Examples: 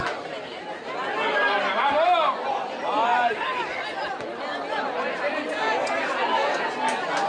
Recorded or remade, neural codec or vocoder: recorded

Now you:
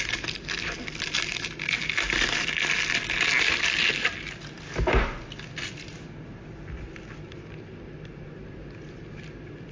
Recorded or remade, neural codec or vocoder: recorded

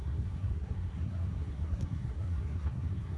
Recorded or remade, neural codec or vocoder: remade, codec, SNAC